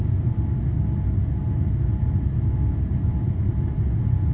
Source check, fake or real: real